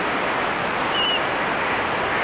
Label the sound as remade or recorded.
recorded